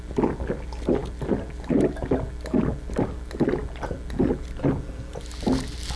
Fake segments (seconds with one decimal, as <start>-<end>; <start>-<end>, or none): none